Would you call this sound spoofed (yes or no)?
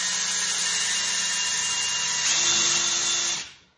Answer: no